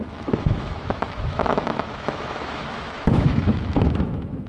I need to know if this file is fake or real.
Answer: fake